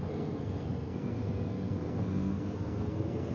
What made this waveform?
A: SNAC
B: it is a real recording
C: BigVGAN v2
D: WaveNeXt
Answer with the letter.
A